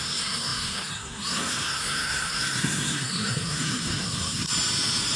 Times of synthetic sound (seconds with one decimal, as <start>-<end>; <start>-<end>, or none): 0.0-4.5